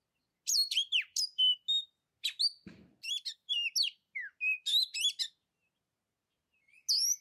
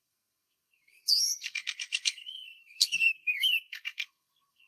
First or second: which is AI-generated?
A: second